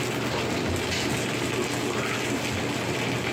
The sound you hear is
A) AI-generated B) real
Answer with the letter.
B